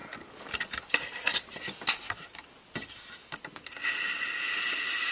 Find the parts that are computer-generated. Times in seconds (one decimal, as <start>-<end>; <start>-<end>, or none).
none